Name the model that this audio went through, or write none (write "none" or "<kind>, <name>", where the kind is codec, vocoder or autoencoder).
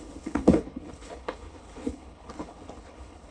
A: codec, HILCodec